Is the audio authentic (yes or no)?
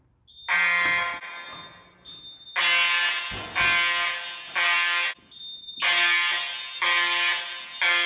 yes